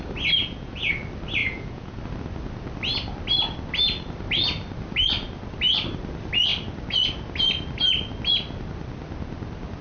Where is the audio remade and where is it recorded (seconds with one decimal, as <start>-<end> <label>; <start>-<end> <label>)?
0.0-0.4 recorded; 0.4-0.9 remade; 0.9-1.4 recorded; 1.4-2.0 remade; 2.0-9.8 recorded